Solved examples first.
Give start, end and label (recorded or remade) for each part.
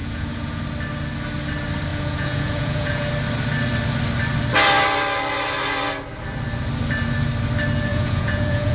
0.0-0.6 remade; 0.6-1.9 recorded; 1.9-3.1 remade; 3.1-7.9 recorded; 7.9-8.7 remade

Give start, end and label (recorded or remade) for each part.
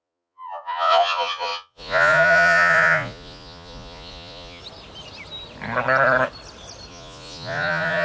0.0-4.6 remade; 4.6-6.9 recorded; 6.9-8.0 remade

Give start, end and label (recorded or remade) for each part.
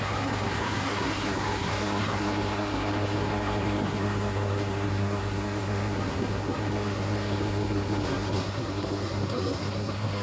0.0-10.2 remade